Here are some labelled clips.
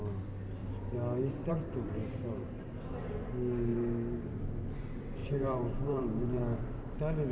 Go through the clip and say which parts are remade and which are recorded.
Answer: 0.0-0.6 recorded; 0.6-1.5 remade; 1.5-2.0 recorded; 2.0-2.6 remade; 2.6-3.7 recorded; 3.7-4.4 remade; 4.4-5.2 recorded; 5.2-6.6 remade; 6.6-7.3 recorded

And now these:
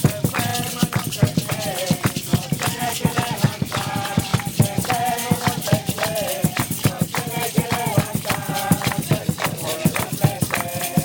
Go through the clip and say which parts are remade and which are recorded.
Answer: 0.0-4.3 remade; 4.3-4.9 recorded; 4.9-11.0 remade

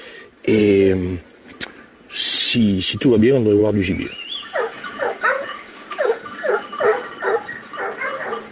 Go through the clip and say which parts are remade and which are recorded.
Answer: 0.0-3.6 recorded; 3.6-6.6 remade; 6.6-8.5 recorded

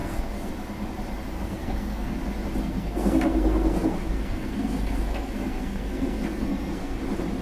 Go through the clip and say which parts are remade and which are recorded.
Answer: 0.0-0.5 remade; 0.5-1.3 recorded; 1.3-2.2 remade; 2.2-2.6 recorded; 2.6-7.0 remade; 7.0-7.4 recorded

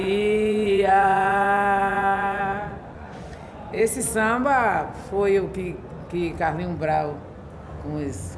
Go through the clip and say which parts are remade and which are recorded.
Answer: 0.0-3.8 remade; 3.8-8.4 recorded

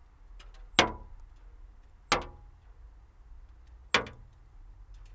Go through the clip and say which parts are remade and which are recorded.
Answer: 0.0-5.1 recorded

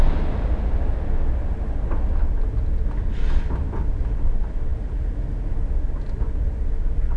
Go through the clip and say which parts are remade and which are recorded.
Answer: 0.0-7.2 recorded

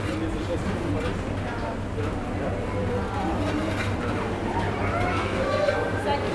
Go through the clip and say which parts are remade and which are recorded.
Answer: 0.0-5.1 recorded; 5.1-5.7 remade; 5.7-6.3 recorded